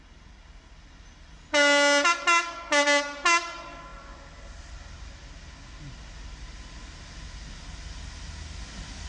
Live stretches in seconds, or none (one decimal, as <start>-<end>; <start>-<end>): 0.0-9.1